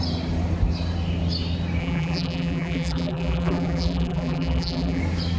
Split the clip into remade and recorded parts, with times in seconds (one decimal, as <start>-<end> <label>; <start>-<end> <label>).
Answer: 0.0-1.8 recorded; 1.8-5.0 remade; 5.0-5.4 recorded